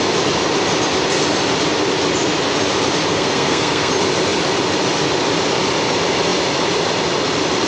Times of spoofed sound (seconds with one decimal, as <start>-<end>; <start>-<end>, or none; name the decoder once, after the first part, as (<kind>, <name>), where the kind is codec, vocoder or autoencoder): 3.1-3.9 (codec, SNAC)